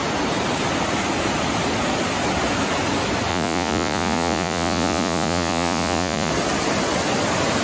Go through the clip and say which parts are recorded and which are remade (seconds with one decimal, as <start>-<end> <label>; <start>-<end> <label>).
0.0-3.3 recorded; 3.3-6.3 remade; 6.3-7.6 recorded